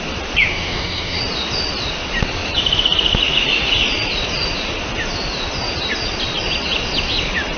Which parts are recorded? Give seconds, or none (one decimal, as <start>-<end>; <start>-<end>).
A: 0.0-0.5; 1.2-7.6